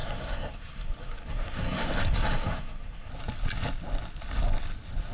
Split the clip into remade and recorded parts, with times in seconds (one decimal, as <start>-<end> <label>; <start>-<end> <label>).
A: 0.0-3.1 remade; 3.1-5.1 recorded